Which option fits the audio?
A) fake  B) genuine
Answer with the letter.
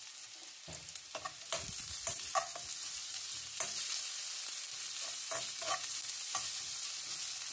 B